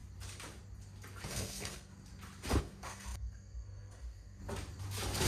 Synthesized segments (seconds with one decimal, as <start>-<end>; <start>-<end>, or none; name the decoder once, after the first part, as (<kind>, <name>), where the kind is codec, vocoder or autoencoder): 1.3-1.9 (codec, SNAC); 2.6-4.4